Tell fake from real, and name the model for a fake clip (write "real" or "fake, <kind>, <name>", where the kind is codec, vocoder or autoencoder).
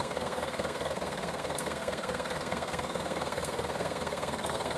fake, codec, SNAC